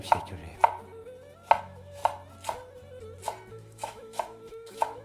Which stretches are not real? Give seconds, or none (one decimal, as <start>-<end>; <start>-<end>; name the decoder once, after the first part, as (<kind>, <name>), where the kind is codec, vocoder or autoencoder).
0.0-0.4 (autoencoder, DAC-VAE); 1.6-2.0; 3.5-5.0